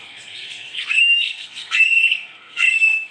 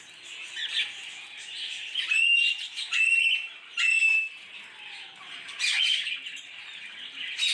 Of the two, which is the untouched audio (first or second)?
second